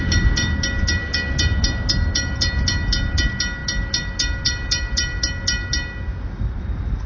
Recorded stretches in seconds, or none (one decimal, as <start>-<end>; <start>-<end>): 0.0-7.1